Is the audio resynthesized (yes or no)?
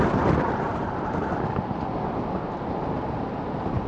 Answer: no